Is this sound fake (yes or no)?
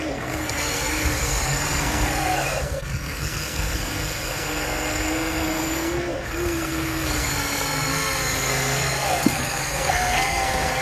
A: yes